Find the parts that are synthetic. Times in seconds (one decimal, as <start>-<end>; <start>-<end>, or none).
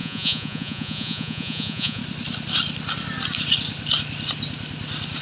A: 0.0-2.0